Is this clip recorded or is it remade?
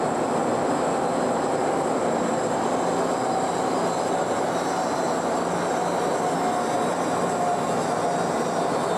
recorded